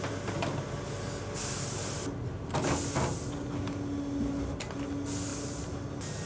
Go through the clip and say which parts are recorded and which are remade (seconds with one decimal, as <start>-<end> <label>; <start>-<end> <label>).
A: 0.0-6.3 recorded